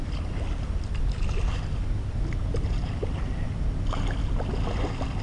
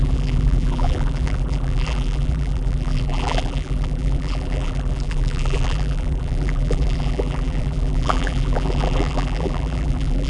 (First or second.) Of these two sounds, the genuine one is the first